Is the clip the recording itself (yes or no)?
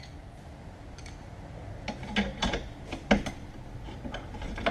yes